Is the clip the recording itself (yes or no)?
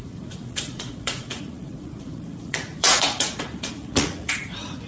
no